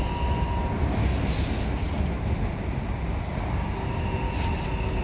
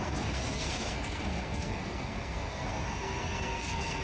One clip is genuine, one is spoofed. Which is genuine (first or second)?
first